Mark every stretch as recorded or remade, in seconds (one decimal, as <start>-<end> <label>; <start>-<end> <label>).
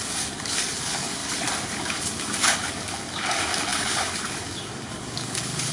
0.0-1.2 remade; 1.2-1.8 recorded; 1.8-5.7 remade